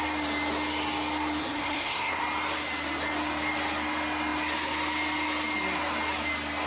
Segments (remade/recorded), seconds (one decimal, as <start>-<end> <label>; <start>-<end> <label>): 0.0-1.4 recorded; 1.4-2.2 remade; 2.2-6.7 recorded